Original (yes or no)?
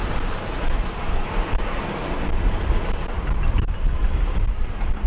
yes